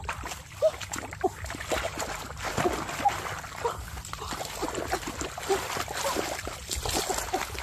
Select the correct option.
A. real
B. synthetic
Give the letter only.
A